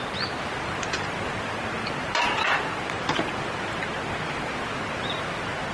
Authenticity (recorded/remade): recorded